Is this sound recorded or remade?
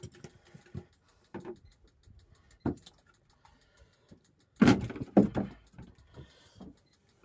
recorded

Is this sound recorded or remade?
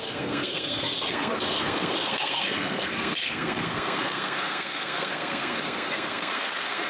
remade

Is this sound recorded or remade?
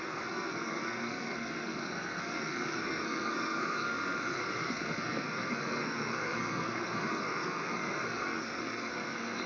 remade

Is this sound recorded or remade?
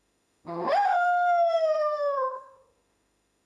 remade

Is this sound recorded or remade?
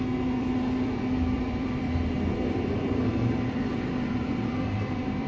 remade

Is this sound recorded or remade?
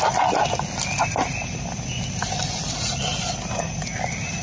recorded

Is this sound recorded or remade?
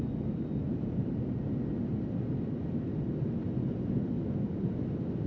recorded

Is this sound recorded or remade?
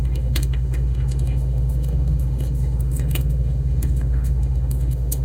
remade